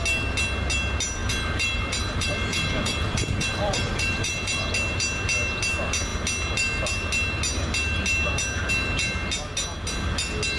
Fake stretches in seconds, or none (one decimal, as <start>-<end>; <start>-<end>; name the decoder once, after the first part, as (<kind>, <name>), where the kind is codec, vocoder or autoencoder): 1.2-4.6 (vocoder, BigVGAN v2)